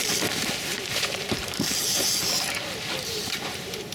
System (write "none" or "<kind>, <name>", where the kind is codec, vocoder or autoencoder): vocoder, BigVGAN v2